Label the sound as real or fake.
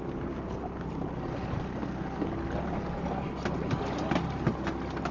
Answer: real